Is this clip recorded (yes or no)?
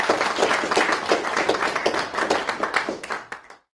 yes